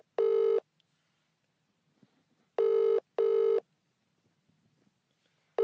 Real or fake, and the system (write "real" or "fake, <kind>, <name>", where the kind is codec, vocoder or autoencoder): real